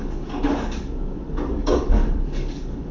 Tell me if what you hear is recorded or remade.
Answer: remade